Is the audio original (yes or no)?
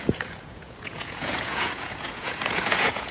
no